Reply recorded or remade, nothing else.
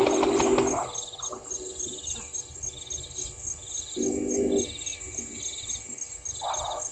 recorded